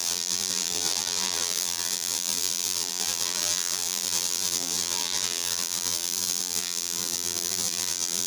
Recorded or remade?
remade